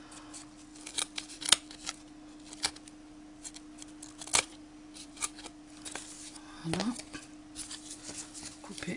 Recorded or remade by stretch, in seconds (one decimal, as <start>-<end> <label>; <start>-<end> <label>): 0.0-0.7 recorded; 0.7-1.4 remade; 1.4-4.3 recorded; 4.3-5.6 remade; 5.6-9.0 recorded